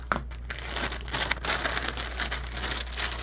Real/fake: real